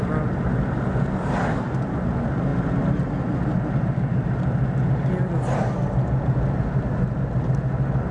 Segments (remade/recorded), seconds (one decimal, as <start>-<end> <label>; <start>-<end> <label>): 0.0-8.1 recorded